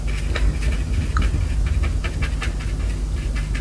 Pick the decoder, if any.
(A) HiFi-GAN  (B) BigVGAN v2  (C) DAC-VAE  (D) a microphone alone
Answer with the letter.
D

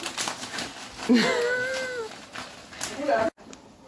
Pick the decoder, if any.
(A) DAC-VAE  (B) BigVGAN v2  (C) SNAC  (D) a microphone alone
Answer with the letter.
D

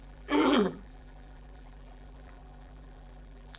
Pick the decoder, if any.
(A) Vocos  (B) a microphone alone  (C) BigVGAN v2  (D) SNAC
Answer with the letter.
C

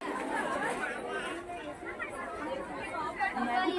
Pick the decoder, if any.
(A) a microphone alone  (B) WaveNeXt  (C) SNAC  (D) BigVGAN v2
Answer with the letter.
A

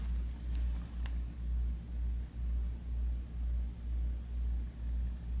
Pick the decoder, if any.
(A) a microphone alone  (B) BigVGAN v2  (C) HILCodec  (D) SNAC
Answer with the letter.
A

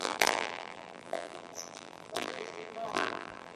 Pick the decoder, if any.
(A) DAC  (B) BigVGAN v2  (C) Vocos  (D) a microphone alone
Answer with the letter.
B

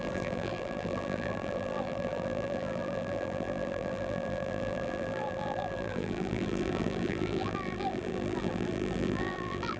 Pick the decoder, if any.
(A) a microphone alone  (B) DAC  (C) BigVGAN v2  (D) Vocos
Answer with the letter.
C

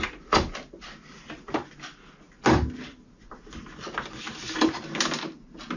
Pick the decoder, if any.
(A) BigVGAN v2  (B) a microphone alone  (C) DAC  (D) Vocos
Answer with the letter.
B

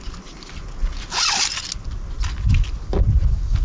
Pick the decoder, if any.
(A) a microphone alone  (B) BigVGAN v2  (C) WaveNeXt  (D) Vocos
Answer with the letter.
A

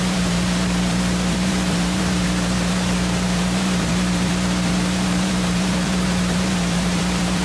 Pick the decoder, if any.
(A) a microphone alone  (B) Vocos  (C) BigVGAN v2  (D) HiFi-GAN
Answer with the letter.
C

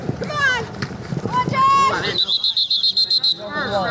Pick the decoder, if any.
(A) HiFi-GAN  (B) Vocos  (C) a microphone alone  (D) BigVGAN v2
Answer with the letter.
C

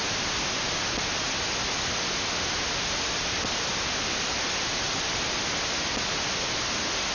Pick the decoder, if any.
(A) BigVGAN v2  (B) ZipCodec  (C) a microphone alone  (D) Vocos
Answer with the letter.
C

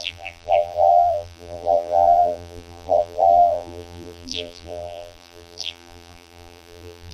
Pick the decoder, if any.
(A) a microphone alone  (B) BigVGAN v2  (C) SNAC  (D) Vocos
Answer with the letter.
B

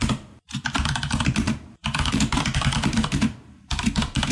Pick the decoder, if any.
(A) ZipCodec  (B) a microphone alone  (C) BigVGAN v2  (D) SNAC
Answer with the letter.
C